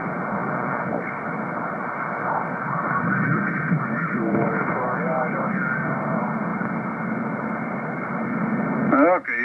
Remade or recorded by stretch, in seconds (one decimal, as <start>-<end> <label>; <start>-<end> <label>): 0.0-9.4 recorded